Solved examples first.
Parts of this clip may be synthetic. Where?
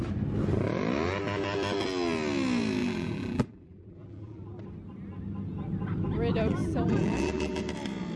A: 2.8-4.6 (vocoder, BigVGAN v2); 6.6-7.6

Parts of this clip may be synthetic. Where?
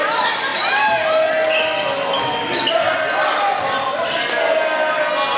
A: none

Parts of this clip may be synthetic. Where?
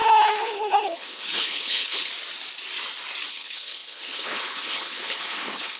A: 0.0-2.1 (codec, HILCodec); 3.3-5.8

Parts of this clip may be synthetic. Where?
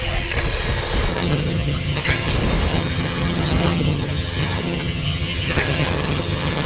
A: 1.1-2.3 (vocoder, HiFi-GAN); 2.7-6.7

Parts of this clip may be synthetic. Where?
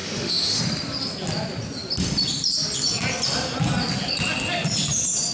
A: 0.0-0.6 (autoencoder, DAC-VAE)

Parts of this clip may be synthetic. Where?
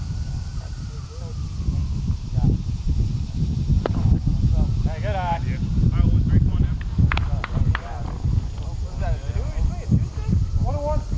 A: none